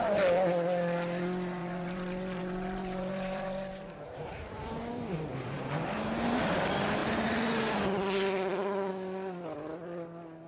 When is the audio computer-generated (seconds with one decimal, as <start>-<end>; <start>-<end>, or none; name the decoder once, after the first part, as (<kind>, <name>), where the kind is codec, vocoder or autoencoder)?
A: 1.6-6.4 (vocoder, BigVGAN v2)